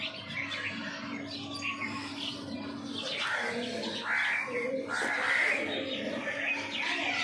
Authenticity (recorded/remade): recorded